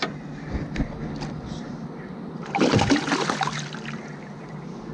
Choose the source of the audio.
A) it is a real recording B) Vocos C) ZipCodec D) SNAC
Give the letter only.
A